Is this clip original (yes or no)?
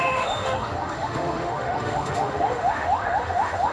no